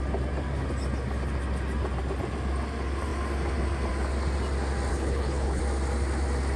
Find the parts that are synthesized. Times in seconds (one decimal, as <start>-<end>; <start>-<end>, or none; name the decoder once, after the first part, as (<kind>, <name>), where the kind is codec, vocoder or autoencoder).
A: 4.9-5.6 (codec, HILCodec)